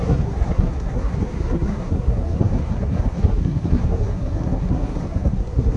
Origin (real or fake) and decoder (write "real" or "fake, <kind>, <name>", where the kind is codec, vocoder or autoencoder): fake, codec, SNAC